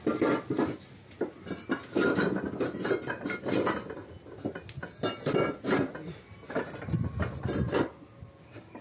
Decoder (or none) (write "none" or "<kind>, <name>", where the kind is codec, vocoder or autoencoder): none